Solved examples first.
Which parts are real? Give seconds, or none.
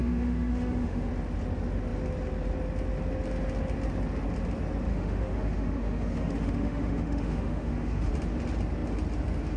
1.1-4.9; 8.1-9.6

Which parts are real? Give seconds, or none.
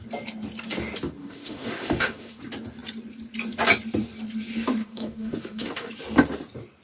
0.0-1.2; 2.4-4.8; 5.9-6.8